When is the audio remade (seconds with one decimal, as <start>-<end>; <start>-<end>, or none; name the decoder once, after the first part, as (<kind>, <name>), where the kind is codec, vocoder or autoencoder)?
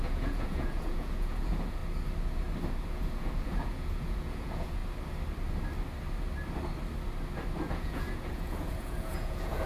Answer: 0.0-1.8 (vocoder, Vocos); 2.9-4.8; 7.6-9.7